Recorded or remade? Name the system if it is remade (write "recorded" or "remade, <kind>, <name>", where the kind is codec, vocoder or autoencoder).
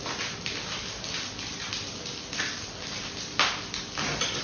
recorded